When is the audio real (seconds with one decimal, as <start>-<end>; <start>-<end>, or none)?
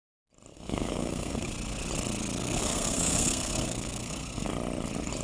0.0-0.5; 1.5-2.4; 4.5-5.2